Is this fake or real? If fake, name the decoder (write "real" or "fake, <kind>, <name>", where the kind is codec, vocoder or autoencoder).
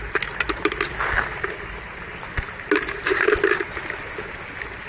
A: real